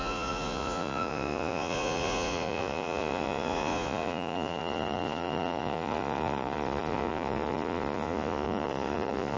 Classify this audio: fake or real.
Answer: fake